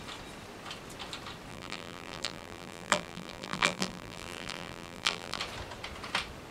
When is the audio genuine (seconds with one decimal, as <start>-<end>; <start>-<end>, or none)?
0.0-1.5; 5.4-6.5